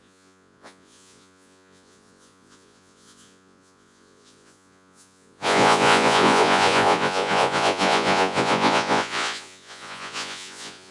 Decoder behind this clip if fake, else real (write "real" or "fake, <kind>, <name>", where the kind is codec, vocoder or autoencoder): fake, vocoder, Vocos